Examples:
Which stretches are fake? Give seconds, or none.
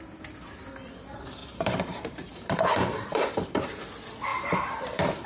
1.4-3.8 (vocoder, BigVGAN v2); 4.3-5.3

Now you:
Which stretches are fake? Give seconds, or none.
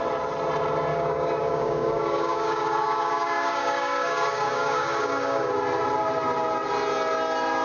0.9-5.5 (codec, DAC)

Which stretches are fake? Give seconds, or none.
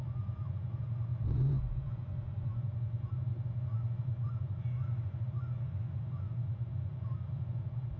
0.0-8.0 (vocoder, Vocos)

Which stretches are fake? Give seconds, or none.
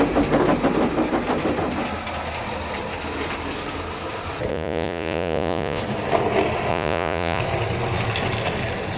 4.5-5.8 (vocoder, Vocos); 6.7-7.4